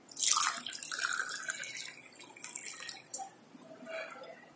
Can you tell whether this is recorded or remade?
recorded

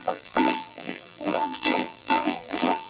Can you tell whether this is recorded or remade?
remade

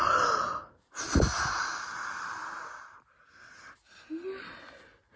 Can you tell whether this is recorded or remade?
recorded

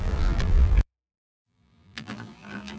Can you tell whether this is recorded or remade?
remade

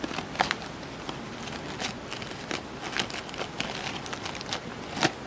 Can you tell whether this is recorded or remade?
recorded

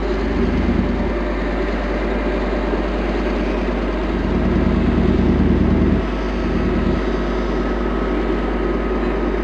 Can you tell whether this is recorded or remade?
recorded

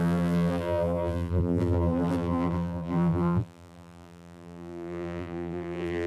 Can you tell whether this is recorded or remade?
remade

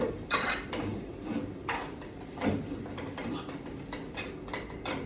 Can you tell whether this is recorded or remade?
remade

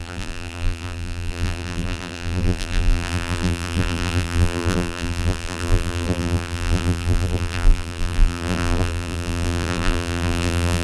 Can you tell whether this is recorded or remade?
remade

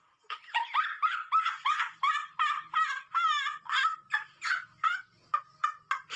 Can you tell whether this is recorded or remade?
recorded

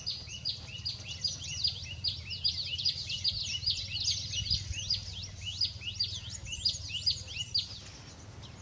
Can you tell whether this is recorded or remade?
recorded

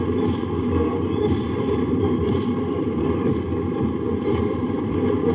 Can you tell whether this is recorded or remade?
remade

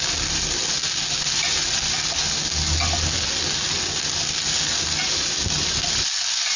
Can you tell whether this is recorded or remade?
recorded